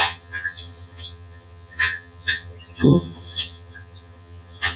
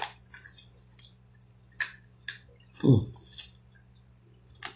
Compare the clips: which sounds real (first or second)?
second